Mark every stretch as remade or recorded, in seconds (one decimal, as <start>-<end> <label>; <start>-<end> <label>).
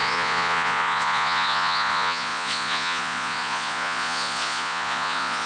0.0-5.5 remade